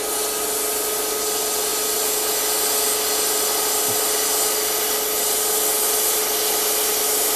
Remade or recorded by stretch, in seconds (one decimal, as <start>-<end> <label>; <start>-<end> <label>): 0.0-7.4 recorded